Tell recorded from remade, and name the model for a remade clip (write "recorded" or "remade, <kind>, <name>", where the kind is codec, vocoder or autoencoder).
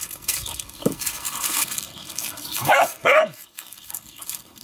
remade, codec, SNAC